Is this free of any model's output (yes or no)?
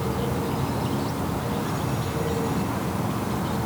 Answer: yes